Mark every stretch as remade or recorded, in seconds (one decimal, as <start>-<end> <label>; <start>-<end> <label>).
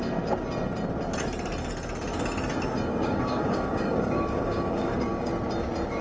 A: 0.0-2.9 recorded; 2.9-5.3 remade; 5.3-6.0 recorded